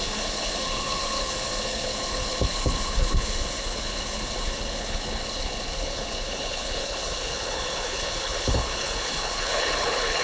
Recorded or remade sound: remade